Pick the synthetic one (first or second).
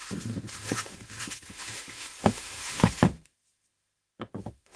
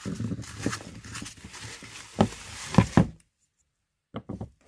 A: first